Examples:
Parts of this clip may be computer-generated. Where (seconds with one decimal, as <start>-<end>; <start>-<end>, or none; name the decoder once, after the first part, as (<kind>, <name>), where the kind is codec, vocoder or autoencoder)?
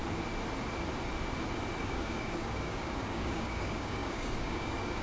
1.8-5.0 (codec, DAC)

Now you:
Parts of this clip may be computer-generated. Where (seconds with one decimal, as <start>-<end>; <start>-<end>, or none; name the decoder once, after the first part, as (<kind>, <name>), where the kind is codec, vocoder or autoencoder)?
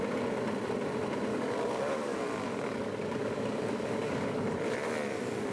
1.3-4.6 (codec, DAC)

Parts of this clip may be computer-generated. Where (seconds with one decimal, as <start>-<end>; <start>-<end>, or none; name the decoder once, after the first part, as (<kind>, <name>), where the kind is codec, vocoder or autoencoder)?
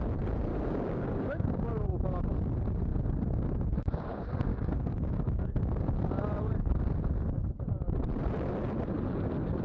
0.5-1.7 (codec, DAC); 4.5-6.0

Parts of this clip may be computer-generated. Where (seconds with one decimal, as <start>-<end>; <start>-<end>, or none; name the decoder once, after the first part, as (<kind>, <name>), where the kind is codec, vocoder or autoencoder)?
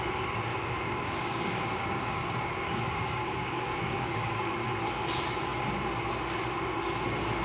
0.5-4.9 (codec, DAC)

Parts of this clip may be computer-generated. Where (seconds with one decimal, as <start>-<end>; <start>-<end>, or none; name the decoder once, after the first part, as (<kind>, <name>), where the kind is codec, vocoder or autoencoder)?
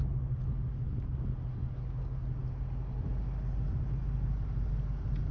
none